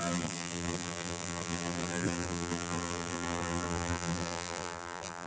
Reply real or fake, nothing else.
fake